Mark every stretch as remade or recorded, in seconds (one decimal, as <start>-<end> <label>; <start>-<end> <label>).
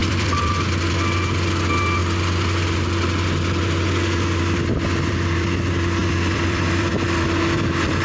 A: 0.0-0.5 remade; 0.5-6.0 recorded; 6.0-6.9 remade; 6.9-8.0 recorded